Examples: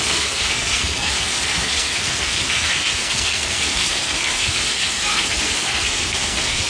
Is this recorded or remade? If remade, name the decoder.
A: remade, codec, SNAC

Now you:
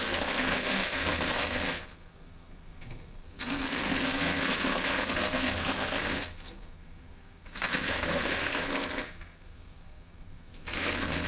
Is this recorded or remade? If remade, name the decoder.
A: remade, codec, SNAC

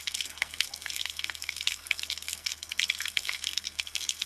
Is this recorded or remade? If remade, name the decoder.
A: remade, codec, SNAC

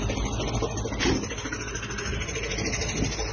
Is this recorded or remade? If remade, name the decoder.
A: recorded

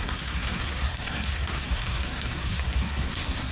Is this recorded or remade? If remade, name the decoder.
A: remade, codec, SNAC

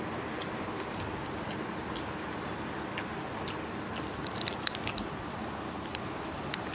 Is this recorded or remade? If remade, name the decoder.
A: recorded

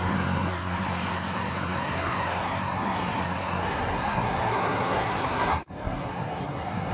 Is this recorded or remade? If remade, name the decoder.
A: remade, codec, SNAC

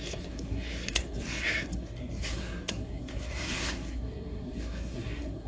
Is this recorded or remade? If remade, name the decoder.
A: remade, codec, SNAC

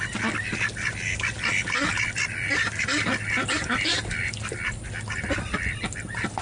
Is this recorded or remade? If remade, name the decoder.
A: recorded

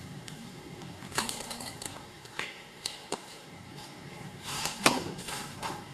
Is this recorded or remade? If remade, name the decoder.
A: remade, codec, SNAC